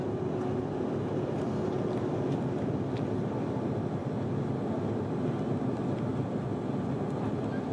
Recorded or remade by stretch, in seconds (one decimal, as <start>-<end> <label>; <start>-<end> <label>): 0.0-7.7 recorded